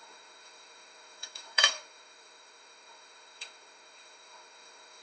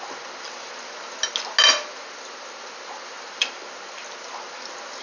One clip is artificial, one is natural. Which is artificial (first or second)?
first